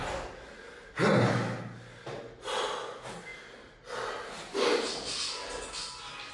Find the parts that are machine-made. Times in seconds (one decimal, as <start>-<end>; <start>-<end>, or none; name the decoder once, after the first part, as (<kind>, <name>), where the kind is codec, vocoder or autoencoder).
none